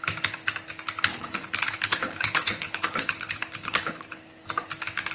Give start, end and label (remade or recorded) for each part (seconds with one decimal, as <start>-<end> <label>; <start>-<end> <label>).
0.0-1.1 recorded; 1.1-4.2 remade; 4.2-5.1 recorded